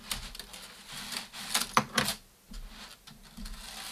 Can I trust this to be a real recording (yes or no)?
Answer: yes